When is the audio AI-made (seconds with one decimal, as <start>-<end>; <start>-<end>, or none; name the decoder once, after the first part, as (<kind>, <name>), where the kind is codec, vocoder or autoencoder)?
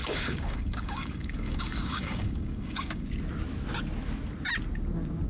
0.0-3.1 (codec, DAC)